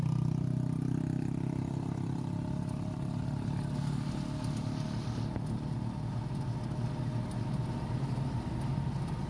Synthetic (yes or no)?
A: no